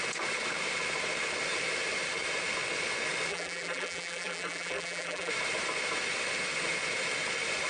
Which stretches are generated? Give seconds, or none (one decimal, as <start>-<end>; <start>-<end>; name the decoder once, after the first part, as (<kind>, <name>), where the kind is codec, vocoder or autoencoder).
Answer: 3.3-5.3 (vocoder, BigVGAN v2)